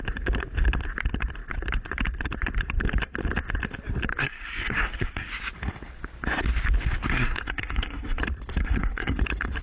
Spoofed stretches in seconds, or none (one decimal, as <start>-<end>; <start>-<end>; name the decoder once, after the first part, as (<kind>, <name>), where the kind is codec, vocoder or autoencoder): 4.1-5.3 (codec, SNAC); 7.0-8.2; 8.6-9.2